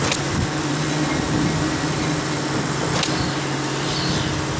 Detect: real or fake real